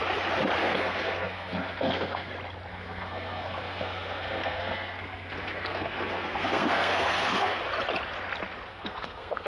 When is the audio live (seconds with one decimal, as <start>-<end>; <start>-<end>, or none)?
0.0-0.6; 2.3-2.7; 7.6-8.7

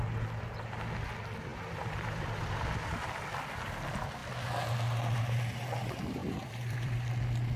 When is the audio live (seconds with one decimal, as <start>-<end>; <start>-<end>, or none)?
0.0-1.5; 3.7-6.2; 7.1-7.6

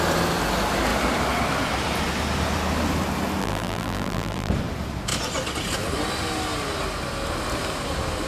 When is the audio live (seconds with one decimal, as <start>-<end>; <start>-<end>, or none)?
0.0-3.4; 4.5-8.3

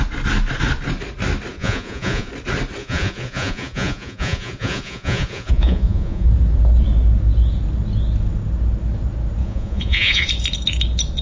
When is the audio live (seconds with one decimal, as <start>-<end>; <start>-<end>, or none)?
0.0-1.5; 2.3-2.8; 6.3-9.4; 10.3-11.2

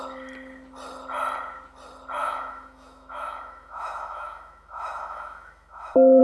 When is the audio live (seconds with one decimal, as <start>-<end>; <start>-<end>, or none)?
0.0-2.2